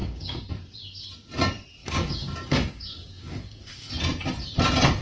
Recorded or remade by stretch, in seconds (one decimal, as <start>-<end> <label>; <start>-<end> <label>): 0.0-0.5 remade; 0.5-1.8 recorded; 1.8-3.9 remade; 3.9-5.0 recorded